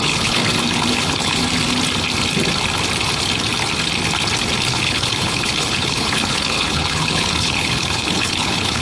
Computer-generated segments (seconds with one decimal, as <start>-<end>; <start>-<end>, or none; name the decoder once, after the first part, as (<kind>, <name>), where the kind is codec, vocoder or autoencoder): 0.0-0.4 (codec, HILCodec); 0.9-1.4; 4.7-8.8